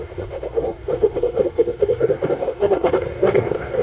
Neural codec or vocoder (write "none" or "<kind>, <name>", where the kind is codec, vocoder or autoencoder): codec, SNAC